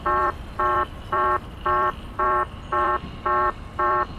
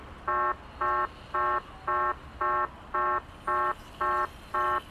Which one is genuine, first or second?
second